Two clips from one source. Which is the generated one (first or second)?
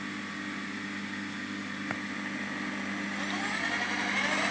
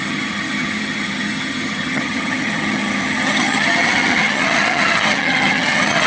second